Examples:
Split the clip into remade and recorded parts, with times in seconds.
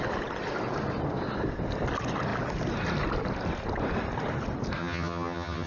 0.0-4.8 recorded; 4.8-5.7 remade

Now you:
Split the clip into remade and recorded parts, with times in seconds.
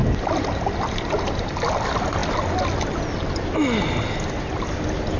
0.0-5.2 recorded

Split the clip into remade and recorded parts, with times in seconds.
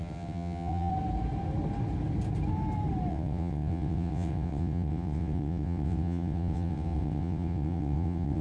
0.0-0.9 remade; 0.9-3.1 recorded; 3.1-8.4 remade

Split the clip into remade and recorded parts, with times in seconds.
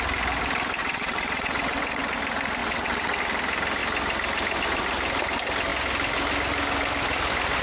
0.0-0.8 recorded; 0.8-2.0 remade; 2.0-2.6 recorded; 2.6-3.2 remade; 3.2-7.6 recorded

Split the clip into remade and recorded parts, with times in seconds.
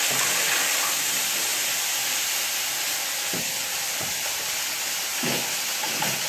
0.0-6.3 recorded